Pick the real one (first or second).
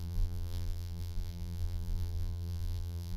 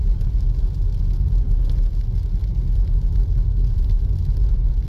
second